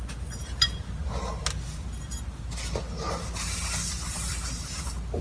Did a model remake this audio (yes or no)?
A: no